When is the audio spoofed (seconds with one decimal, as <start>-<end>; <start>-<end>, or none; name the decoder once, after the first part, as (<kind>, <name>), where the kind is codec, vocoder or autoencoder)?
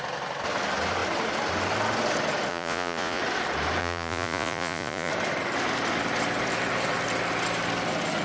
2.5-3.2 (vocoder, Vocos); 3.8-5.1